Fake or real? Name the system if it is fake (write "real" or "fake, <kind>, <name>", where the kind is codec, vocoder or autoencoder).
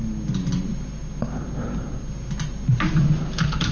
real